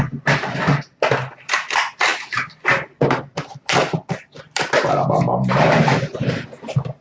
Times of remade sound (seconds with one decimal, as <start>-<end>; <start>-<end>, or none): 2.1-4.8